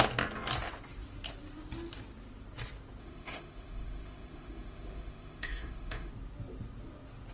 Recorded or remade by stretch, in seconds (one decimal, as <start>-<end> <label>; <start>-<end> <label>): 0.0-3.0 recorded; 3.0-6.1 remade; 6.1-7.3 recorded

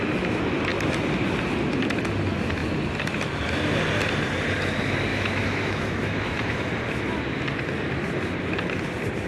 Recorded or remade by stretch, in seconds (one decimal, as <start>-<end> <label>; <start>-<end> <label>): 0.0-5.1 recorded; 5.1-6.7 remade; 6.7-9.3 recorded

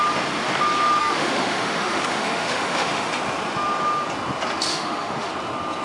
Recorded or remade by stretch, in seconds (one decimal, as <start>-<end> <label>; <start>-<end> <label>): 0.0-1.0 recorded; 1.0-3.1 remade; 3.1-4.7 recorded; 4.7-5.3 remade; 5.3-5.8 recorded

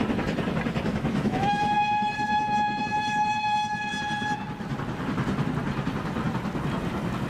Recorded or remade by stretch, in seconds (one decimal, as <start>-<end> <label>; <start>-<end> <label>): 0.0-0.9 recorded; 0.9-3.9 remade; 3.9-7.3 recorded

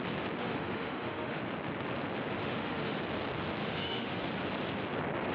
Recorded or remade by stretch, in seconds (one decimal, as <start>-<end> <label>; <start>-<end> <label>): 0.0-0.4 recorded; 0.4-1.4 remade; 1.4-2.4 recorded; 2.4-3.0 remade; 3.0-3.6 recorded; 3.6-4.2 remade; 4.2-5.3 recorded

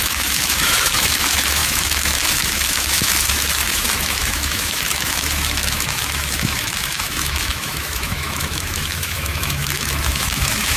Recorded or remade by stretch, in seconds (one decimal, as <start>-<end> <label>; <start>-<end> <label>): 0.0-10.8 remade

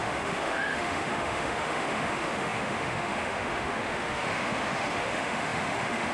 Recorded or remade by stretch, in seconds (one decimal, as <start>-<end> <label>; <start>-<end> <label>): 0.0-6.1 remade

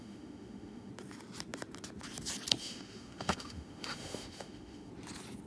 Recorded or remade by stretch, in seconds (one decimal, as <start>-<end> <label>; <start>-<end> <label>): 0.0-0.9 remade; 0.9-2.6 recorded; 2.6-4.9 remade; 4.9-5.5 recorded